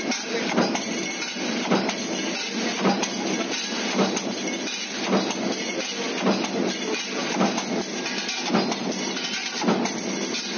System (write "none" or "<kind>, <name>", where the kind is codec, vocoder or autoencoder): none